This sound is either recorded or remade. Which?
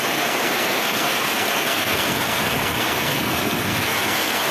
remade